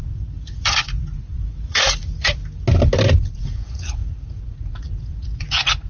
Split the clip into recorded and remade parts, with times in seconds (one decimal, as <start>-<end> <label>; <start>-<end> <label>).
0.0-2.4 remade; 2.4-3.2 recorded; 3.2-5.9 remade